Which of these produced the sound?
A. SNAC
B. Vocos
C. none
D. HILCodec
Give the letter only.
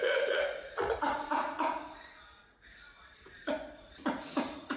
B